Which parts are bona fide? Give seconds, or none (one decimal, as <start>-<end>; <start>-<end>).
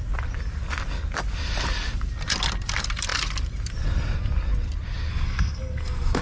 0.0-5.1